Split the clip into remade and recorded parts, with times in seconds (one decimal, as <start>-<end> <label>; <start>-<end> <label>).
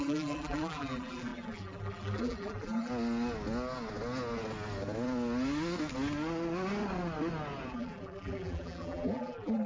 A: 0.0-2.9 remade; 2.9-7.7 recorded; 7.7-9.7 remade